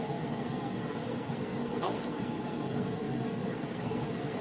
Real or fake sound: fake